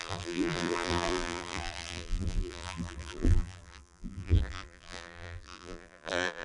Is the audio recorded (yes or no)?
no